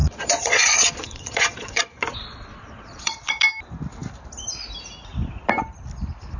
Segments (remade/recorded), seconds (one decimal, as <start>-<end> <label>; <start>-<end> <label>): 0.0-3.4 remade; 3.4-6.4 recorded